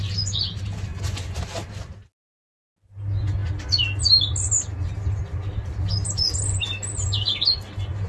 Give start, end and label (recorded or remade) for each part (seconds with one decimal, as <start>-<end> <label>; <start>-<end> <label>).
0.0-0.9 recorded; 0.9-1.4 remade; 1.4-8.1 recorded